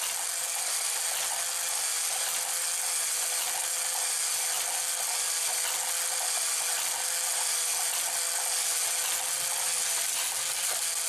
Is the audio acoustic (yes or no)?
yes